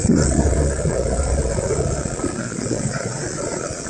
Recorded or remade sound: remade